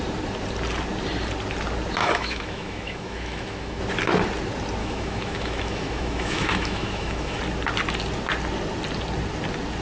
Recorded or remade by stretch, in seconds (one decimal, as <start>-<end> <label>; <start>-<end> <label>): 0.0-2.0 recorded; 2.0-3.8 remade; 3.8-4.8 recorded; 4.8-7.4 remade; 7.4-9.8 recorded